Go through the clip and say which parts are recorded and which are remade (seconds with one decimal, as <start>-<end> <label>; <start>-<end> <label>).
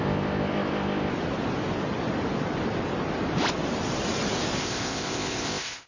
0.0-1.1 remade; 1.1-4.6 recorded; 4.6-5.9 remade